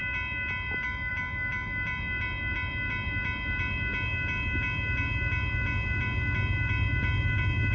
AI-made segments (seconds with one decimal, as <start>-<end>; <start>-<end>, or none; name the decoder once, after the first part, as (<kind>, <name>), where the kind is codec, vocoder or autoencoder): none